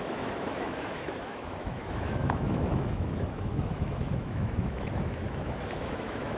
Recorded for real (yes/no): no